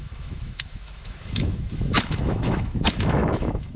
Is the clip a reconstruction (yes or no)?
yes